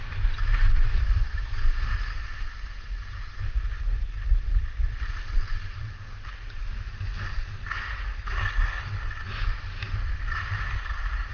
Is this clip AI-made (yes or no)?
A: no